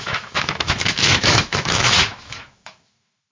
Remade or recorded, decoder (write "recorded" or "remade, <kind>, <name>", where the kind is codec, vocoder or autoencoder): remade, autoencoder, DAC-VAE